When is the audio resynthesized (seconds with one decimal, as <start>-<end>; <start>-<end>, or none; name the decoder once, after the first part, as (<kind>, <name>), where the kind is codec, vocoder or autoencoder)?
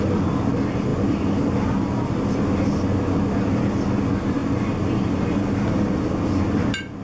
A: 0.9-1.5 (vocoder, BigVGAN v2)